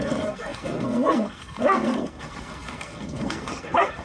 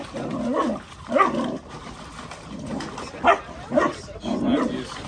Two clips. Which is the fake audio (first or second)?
first